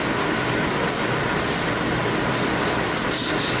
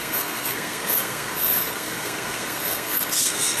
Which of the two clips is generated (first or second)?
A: second